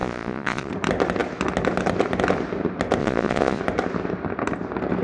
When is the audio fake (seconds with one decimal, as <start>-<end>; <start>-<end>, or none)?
0.0-0.7; 3.0-3.6